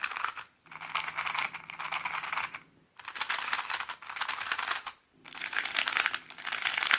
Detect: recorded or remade recorded